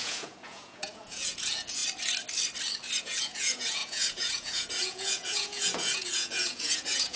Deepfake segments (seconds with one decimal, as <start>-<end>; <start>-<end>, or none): 0.0-1.8; 3.0-7.2

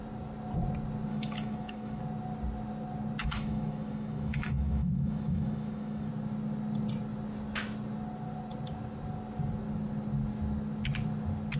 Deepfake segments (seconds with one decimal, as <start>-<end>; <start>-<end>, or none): 1.1-2.0; 3.2-6.1

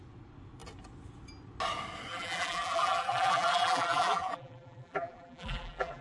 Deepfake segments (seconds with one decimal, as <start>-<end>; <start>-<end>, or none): 2.1-6.0